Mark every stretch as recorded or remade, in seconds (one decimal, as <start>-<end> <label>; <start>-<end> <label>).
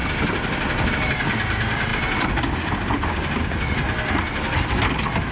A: 0.0-5.3 recorded